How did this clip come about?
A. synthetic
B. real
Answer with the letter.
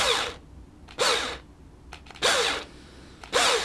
B